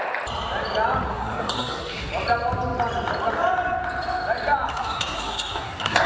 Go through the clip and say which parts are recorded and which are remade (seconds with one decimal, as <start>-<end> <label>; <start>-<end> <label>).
0.0-1.1 recorded; 1.1-2.1 remade; 2.1-4.7 recorded; 4.7-6.1 remade